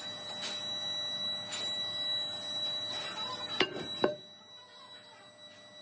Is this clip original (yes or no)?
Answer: yes